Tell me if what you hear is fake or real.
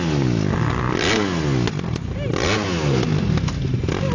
real